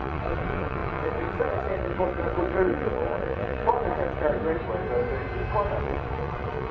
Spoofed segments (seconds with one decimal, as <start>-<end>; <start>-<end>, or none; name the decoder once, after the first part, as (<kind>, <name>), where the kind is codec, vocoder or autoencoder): 0.0-4.3 (vocoder, WaveNeXt); 5.8-6.7